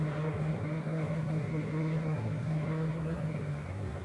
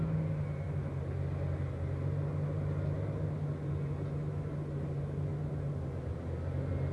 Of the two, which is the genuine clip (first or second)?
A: second